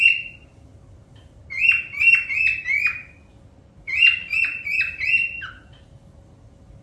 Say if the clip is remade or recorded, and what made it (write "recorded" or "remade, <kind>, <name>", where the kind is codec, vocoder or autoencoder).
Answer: recorded